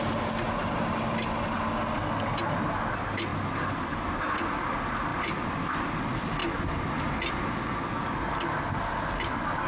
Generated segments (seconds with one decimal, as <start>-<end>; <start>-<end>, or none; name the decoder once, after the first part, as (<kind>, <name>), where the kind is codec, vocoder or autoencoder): 3.3-4.1 (vocoder, BigVGAN v2); 5.1-5.9